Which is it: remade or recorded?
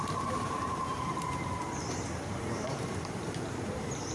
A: remade